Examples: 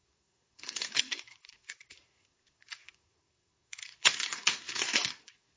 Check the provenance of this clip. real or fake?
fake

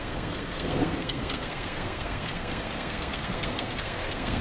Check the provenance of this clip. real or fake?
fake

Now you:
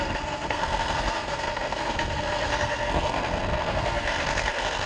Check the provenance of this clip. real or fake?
fake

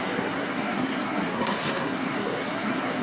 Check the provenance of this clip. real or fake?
fake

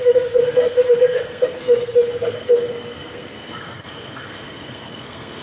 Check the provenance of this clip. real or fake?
fake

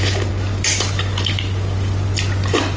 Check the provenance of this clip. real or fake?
real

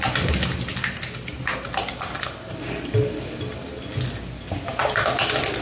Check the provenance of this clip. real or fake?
real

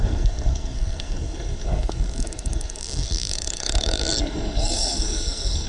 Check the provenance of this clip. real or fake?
fake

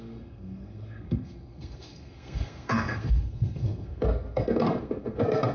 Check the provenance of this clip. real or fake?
fake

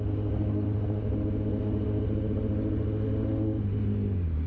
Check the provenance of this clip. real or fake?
real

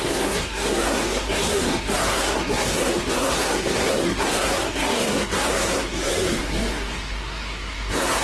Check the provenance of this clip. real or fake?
fake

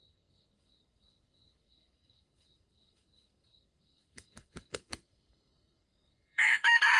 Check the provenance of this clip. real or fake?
fake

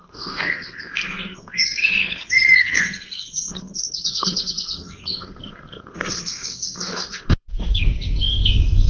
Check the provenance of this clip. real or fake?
fake